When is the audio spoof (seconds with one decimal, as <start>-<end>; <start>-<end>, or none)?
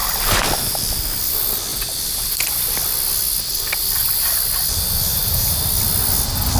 5.1-5.6